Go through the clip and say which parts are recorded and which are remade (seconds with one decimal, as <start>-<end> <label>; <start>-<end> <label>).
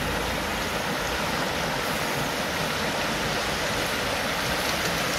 0.0-5.2 recorded